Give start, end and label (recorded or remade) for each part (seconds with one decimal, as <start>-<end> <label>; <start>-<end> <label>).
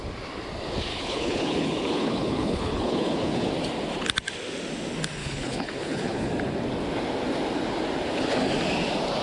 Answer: 0.0-0.9 recorded; 0.9-3.5 remade; 3.5-5.2 recorded; 5.2-6.3 remade; 6.3-9.2 recorded